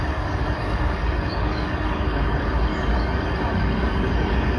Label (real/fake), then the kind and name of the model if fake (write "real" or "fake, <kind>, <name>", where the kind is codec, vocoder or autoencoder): fake, codec, DAC